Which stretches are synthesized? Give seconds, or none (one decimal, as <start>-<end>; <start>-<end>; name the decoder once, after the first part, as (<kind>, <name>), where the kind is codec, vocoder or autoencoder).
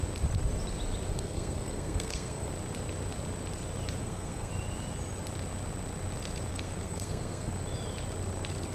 1.1-2.5 (codec, SNAC); 4.0-4.5; 6.5-7.5